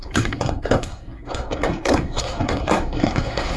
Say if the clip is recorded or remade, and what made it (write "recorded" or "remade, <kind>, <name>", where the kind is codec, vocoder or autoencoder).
remade, codec, SNAC